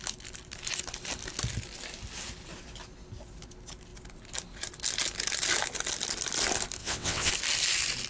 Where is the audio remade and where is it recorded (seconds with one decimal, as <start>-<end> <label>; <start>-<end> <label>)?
0.0-6.8 recorded; 6.8-7.3 remade; 7.3-8.1 recorded